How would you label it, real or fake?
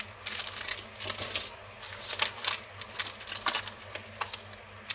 real